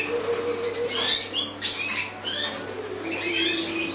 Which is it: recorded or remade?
recorded